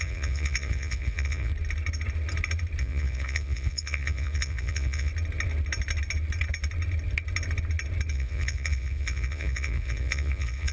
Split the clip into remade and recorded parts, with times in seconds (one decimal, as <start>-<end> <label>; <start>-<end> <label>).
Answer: 0.0-1.5 remade; 1.5-2.8 recorded; 2.8-5.1 remade; 5.1-8.1 recorded; 8.1-10.7 remade